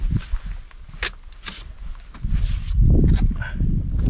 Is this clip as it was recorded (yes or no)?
yes